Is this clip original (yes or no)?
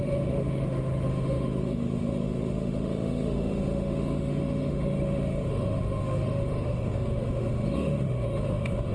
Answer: no